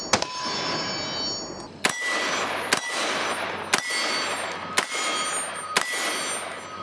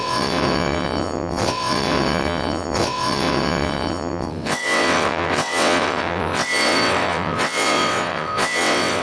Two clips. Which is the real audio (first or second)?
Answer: first